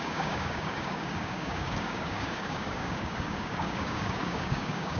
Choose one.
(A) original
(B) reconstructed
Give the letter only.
B